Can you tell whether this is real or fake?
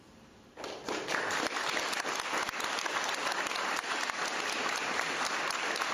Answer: real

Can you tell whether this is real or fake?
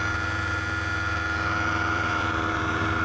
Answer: fake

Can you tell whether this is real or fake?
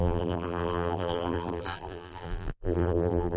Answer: fake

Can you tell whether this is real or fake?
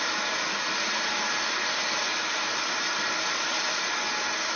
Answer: real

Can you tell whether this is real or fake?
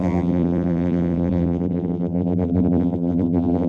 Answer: fake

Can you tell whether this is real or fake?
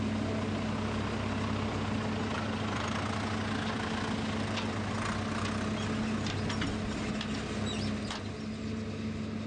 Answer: real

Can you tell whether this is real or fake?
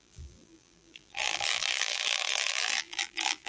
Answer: fake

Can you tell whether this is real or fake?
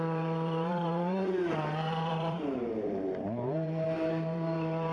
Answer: fake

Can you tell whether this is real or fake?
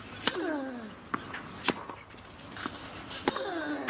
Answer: real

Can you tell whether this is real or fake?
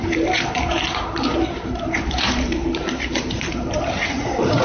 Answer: fake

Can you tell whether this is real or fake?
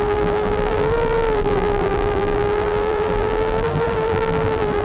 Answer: fake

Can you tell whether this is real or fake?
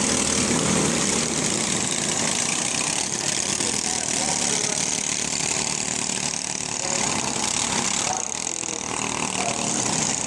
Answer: real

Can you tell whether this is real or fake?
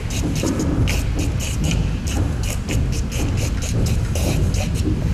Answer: real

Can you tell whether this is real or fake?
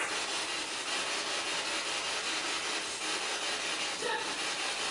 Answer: real